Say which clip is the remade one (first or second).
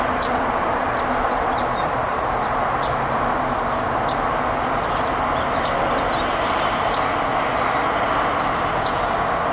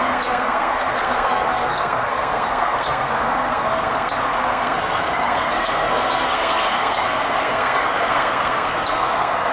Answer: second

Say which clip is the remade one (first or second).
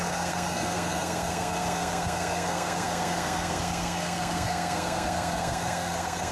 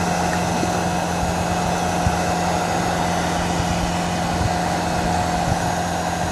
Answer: first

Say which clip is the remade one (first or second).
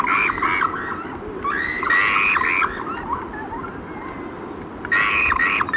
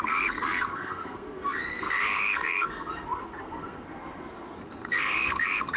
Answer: second